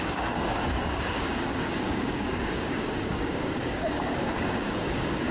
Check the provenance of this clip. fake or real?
fake